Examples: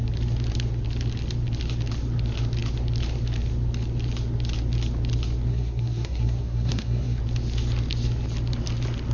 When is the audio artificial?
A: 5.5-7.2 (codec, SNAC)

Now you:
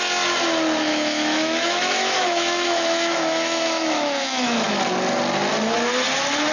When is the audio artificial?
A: 0.9-4.8 (autoencoder, DAC-VAE)

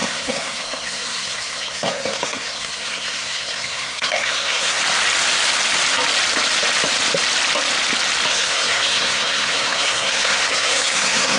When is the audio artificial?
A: 0.0-4.8 (codec, SNAC); 8.3-11.4

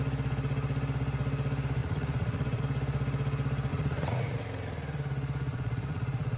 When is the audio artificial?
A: 1.8-2.6 (vocoder, Vocos); 3.7-4.4; 5.5-6.4

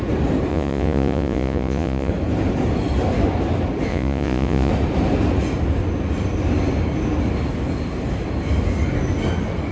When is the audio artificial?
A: 0.5-2.1 (vocoder, Vocos); 3.9-4.7

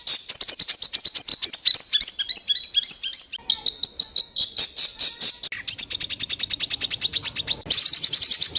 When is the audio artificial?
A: none

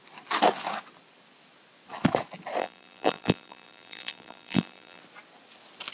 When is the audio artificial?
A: 2.6-5.0 (vocoder, BigVGAN v2)